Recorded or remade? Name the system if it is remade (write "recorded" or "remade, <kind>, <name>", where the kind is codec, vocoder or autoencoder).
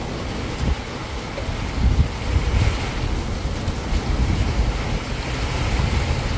recorded